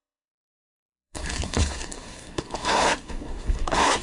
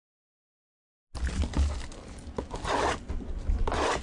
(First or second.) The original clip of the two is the second